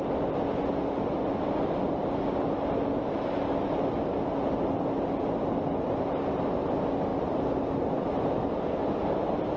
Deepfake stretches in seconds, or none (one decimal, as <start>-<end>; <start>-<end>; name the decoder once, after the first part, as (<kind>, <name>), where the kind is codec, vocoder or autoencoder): none

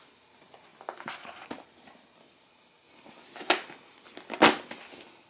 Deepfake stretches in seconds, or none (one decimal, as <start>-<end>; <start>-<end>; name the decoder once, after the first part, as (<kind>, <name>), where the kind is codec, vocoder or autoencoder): none

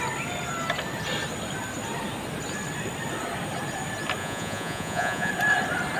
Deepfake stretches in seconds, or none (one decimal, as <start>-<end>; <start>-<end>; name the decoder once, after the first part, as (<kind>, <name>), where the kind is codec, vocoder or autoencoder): 4.2-5.3 (vocoder, Vocos)

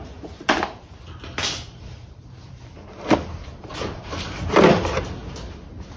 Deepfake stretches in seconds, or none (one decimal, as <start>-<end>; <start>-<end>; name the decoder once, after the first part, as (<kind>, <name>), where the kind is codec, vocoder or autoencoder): 0.0-5.2 (vocoder, BigVGAN v2)

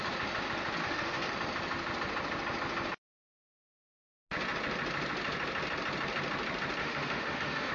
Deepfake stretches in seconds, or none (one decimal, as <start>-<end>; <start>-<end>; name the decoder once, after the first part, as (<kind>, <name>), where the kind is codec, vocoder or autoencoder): 0.8-1.3 (autoencoder, DAC-VAE); 6.8-7.7

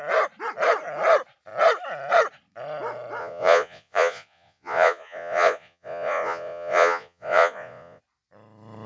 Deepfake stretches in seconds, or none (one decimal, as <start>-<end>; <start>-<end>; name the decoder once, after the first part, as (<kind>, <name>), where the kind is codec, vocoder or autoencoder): 3.2-8.0 (vocoder, Vocos)

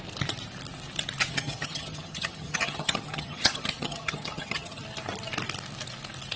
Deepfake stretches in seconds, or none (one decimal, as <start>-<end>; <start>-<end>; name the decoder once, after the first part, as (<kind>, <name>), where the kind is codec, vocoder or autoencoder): 1.3-4.8 (vocoder, HiFi-GAN)

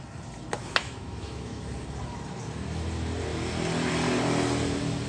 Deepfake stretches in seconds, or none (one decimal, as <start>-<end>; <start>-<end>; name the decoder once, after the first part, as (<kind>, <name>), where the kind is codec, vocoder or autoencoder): 0.8-1.6 (autoencoder, DAC-VAE)